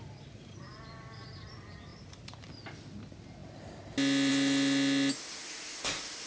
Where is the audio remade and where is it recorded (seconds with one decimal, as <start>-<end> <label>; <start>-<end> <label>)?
0.0-6.3 recorded